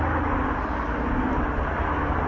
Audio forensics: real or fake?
real